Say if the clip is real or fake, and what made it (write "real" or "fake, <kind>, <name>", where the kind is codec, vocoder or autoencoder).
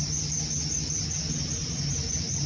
real